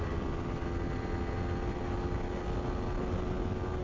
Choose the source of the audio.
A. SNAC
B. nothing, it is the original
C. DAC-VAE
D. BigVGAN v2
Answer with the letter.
B